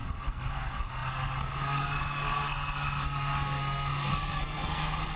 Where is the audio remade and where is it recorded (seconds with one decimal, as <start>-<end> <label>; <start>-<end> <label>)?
0.0-5.2 remade